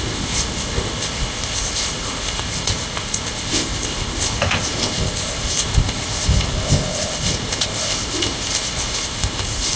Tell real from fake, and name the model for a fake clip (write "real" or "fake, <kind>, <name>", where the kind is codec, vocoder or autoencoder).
fake, codec, ZipCodec